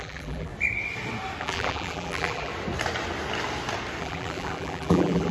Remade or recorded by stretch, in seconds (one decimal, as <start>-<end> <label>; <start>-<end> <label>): 0.0-0.5 remade; 0.5-1.4 recorded; 1.4-2.5 remade; 2.5-4.0 recorded; 4.0-5.3 remade